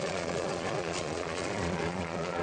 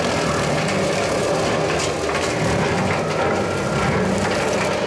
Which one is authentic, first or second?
second